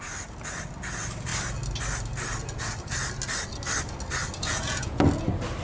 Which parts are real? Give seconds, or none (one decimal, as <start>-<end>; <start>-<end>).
0.0-4.4; 5.0-5.6